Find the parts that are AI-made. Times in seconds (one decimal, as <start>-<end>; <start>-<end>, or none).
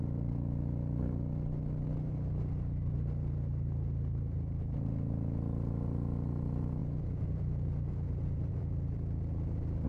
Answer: 6.8-8.6